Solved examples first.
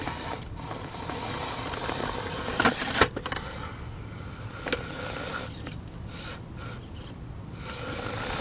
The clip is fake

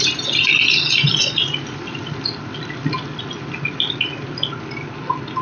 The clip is real